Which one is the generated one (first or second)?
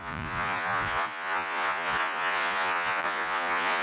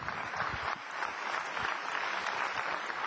first